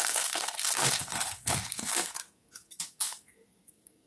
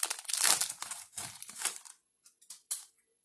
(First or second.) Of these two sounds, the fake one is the first